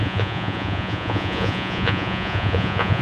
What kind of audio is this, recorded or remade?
remade